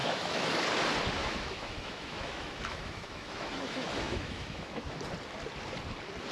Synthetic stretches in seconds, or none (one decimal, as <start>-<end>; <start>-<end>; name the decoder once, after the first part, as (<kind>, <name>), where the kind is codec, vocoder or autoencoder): 0.0-0.6 (autoencoder, DAC-VAE); 1.2-5.0